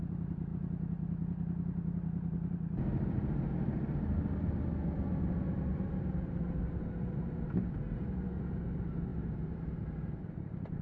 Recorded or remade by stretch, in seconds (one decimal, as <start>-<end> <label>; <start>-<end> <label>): 0.0-5.7 recorded; 5.7-8.0 remade; 8.0-9.1 recorded; 9.1-10.8 remade